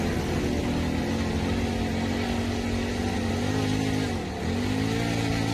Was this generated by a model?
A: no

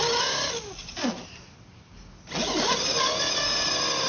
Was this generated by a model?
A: no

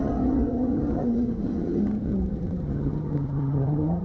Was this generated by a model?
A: yes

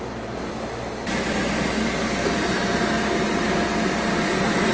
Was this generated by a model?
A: no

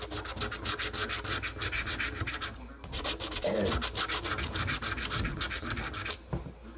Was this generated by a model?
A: no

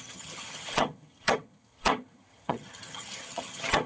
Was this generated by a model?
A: yes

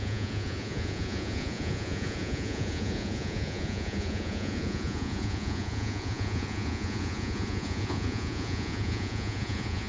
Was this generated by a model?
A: yes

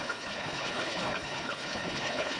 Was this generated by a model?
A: yes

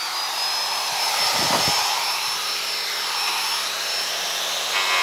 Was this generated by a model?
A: no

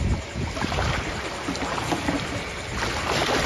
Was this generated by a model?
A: no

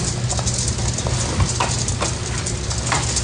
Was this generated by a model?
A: no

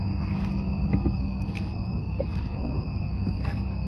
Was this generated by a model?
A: yes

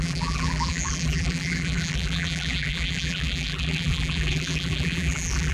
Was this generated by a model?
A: yes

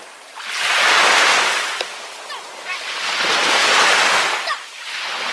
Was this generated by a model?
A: no